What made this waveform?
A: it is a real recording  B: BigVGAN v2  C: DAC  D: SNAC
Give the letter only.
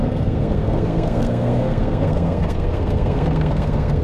D